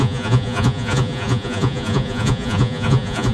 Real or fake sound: fake